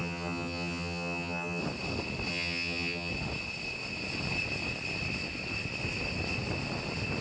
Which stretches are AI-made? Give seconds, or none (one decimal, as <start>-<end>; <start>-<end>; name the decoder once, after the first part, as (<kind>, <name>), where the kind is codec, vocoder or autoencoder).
0.0-1.6 (vocoder, HiFi-GAN); 2.3-3.1